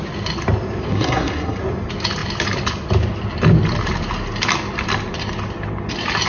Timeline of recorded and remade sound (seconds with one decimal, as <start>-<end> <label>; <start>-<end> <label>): 0.0-0.9 recorded; 0.9-1.6 remade; 1.6-6.3 recorded